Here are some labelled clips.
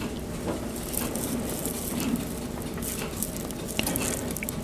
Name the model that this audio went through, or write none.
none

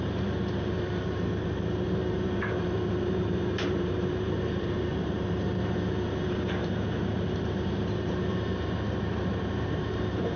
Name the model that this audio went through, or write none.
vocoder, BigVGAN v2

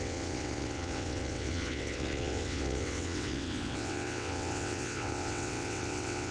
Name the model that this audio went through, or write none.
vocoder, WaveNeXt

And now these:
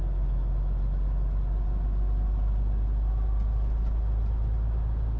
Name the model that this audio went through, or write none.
none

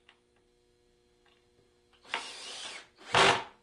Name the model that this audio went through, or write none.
none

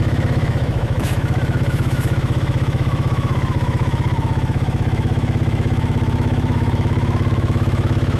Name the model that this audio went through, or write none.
autoencoder, DAC-VAE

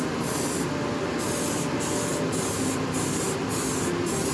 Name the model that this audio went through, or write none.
none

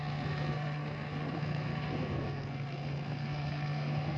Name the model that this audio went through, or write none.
codec, SNAC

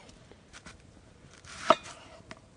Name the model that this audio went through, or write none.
vocoder, BigVGAN v2